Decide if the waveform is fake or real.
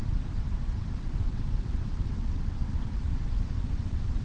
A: fake